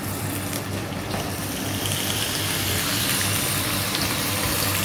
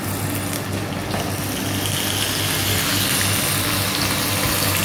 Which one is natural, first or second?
second